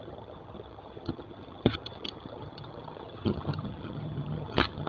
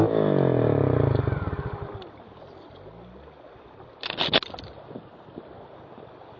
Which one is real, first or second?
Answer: second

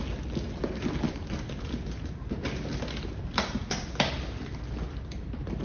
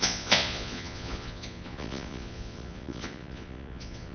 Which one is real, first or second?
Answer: first